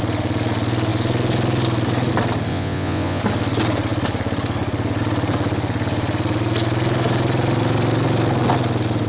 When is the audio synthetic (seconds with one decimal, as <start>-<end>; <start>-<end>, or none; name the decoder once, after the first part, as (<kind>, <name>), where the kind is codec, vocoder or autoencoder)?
2.5-3.2 (vocoder, Vocos)